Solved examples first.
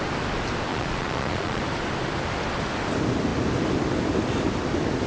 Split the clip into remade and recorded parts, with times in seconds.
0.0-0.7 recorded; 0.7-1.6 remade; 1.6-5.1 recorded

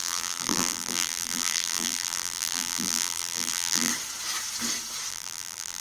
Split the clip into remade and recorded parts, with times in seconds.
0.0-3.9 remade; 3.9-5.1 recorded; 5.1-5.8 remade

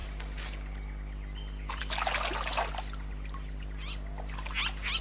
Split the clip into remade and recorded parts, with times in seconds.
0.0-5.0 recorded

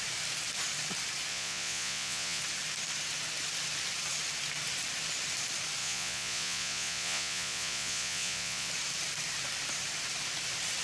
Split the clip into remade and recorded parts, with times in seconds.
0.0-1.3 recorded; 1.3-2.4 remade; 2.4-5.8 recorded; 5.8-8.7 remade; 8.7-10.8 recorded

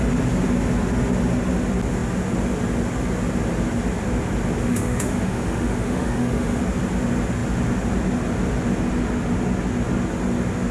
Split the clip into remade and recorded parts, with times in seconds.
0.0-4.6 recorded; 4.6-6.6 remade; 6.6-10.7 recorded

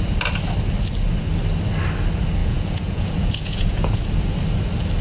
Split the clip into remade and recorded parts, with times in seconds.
0.0-2.4 recorded; 2.4-4.1 remade; 4.1-5.0 recorded